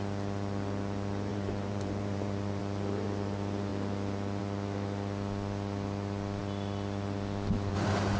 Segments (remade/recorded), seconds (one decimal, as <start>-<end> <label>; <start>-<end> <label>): 0.0-1.3 recorded; 1.3-2.6 remade; 2.6-8.2 recorded